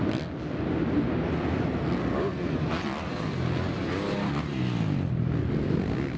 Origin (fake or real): real